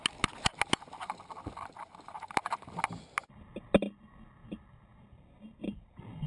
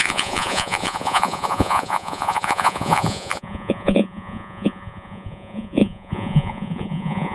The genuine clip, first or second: first